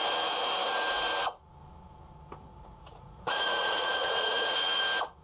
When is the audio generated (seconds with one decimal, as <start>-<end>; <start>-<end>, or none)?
2.5-4.8

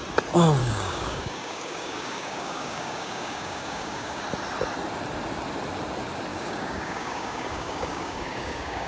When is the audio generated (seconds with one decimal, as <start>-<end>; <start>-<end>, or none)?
0.6-4.2; 6.3-8.9